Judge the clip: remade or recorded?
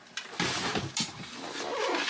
recorded